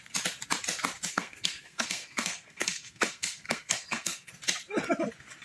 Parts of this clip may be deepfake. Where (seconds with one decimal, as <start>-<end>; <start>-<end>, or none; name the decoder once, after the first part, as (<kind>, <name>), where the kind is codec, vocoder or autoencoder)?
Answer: 1.1-4.3 (codec, SNAC)